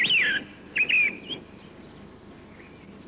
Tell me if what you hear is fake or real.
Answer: real